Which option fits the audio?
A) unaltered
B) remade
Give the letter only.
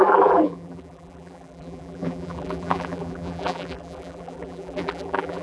B